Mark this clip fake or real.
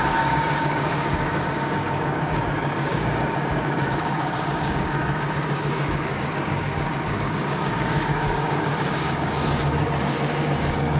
fake